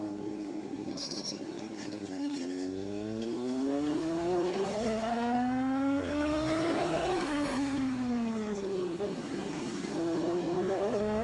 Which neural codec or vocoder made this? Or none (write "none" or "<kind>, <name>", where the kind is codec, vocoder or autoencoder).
codec, SNAC